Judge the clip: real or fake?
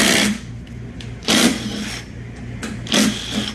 real